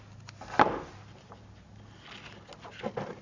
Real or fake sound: real